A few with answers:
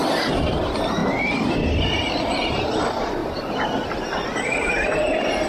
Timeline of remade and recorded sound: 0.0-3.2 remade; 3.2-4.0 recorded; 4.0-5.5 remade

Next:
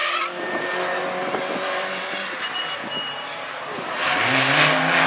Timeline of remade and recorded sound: 0.0-0.6 remade; 0.6-1.2 recorded; 1.2-4.0 remade; 4.0-5.1 recorded

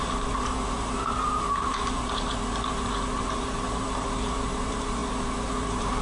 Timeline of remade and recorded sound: 0.0-6.0 remade

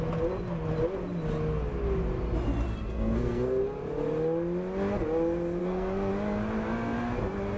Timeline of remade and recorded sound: 0.0-2.8 recorded; 2.8-3.6 remade; 3.6-5.6 recorded; 5.6-6.1 remade; 6.1-7.6 recorded

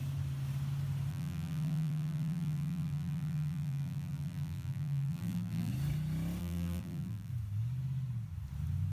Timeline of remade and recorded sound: 0.0-1.1 recorded; 1.1-5.7 remade; 5.7-6.4 recorded; 6.4-7.3 remade; 7.3-8.9 recorded

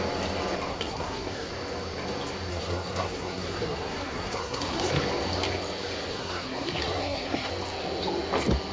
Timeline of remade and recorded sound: 0.0-0.7 recorded; 0.7-1.5 remade; 1.5-2.5 recorded; 2.5-4.9 remade; 4.9-6.1 recorded; 6.1-7.5 remade; 7.5-8.7 recorded

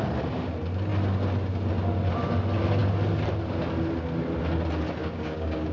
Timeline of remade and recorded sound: 0.0-5.0 recorded; 5.0-5.7 remade